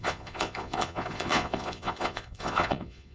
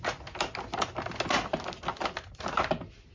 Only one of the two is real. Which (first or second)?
second